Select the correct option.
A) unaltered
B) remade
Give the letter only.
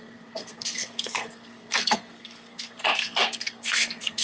B